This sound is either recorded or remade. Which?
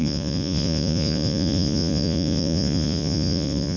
remade